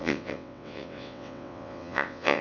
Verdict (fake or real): fake